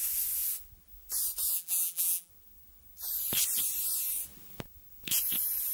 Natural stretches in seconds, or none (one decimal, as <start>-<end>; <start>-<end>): 0.0-1.5; 2.3-5.7